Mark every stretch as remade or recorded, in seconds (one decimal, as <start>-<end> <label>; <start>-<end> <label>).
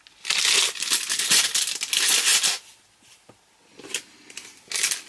0.0-5.1 recorded